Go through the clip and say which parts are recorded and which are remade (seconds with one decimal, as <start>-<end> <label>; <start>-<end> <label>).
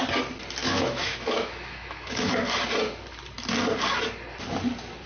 0.0-0.6 recorded; 0.6-2.3 remade; 2.3-5.1 recorded